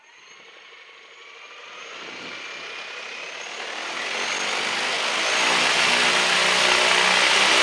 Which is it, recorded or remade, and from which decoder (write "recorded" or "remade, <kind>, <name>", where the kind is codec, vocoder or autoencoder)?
recorded